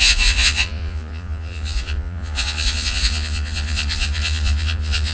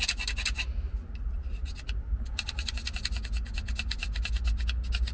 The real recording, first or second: second